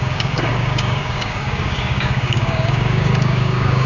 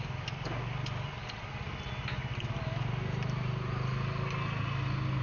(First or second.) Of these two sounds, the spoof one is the first